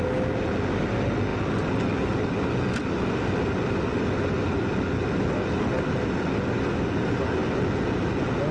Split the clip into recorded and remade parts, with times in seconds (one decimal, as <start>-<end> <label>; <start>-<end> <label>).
0.0-8.5 recorded

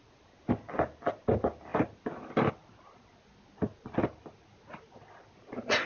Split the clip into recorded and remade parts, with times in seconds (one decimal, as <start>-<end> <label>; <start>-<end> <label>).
0.0-5.9 recorded

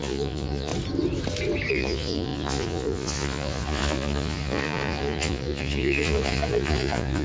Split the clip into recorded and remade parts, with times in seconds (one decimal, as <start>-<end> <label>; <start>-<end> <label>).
0.0-0.7 remade; 0.7-1.7 recorded; 1.7-7.2 remade

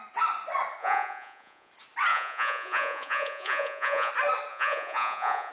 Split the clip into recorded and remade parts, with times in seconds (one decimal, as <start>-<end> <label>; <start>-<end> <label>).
0.0-0.8 recorded; 0.8-1.7 remade; 1.7-2.1 recorded; 2.1-4.1 remade; 4.1-4.5 recorded; 4.5-5.5 remade

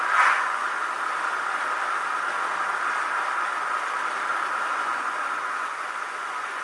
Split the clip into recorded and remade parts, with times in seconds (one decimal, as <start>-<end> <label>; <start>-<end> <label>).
0.0-0.6 remade; 0.6-4.6 recorded; 4.6-6.6 remade

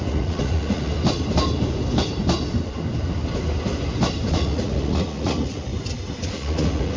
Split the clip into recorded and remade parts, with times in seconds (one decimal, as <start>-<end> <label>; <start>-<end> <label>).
0.0-0.9 remade; 0.9-4.3 recorded; 4.3-5.7 remade; 5.7-6.3 recorded; 6.3-7.0 remade

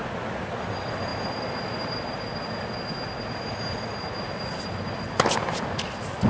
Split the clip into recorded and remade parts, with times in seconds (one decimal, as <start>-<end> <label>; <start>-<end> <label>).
0.0-6.3 recorded